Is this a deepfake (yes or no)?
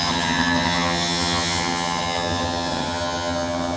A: yes